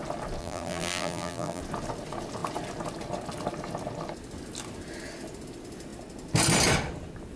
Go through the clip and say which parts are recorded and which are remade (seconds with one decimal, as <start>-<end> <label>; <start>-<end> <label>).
0.0-0.4 recorded; 0.4-1.6 remade; 1.6-7.4 recorded